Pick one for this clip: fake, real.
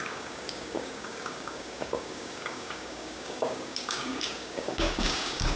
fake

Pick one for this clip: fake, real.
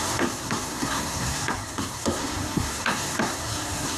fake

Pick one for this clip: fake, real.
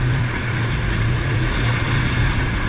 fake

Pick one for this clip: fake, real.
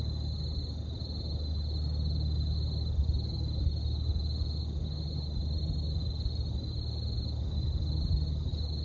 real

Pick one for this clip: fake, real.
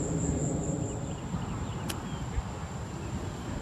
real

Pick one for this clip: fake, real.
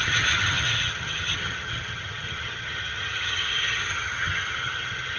fake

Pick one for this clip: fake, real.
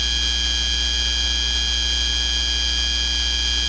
real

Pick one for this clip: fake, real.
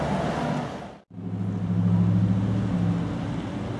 real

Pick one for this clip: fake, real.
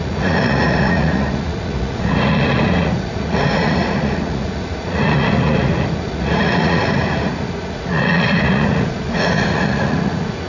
fake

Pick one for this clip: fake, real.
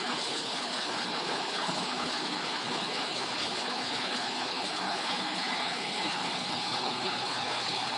fake